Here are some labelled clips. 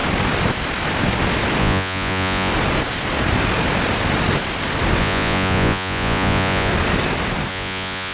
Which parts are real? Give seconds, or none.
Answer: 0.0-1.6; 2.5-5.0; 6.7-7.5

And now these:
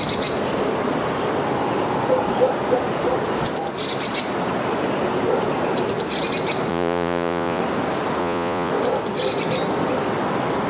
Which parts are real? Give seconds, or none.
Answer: 0.0-6.7; 7.6-8.2; 8.7-10.7

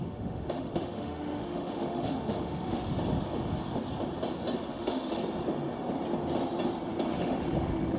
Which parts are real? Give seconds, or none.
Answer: 2.9-4.7; 5.2-7.1